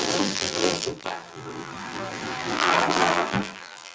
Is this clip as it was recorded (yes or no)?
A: no